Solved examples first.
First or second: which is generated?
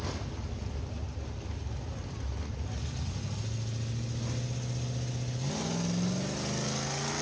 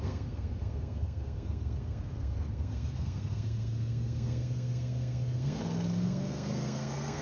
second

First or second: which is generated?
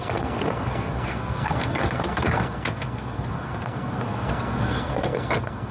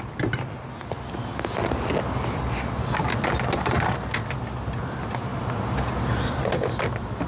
first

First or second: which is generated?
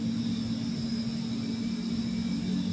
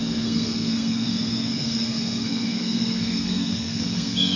second